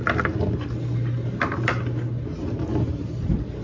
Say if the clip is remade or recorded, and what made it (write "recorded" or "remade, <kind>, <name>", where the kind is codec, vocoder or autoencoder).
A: recorded